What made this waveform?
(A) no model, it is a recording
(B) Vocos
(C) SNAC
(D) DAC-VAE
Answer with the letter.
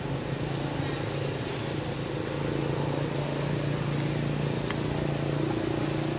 A